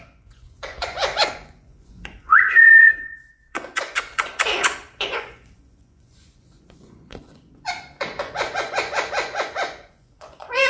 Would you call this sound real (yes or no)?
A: no